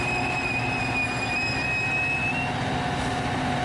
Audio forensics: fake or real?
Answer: real